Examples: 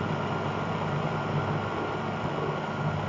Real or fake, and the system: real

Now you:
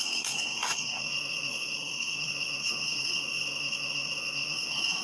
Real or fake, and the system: fake, codec, SNAC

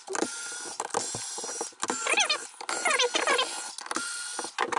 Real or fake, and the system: real